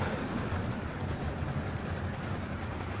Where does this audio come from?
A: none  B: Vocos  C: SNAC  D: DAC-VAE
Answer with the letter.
A